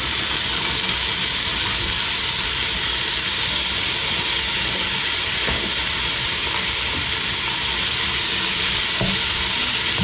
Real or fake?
real